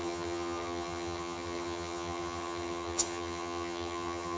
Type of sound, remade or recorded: remade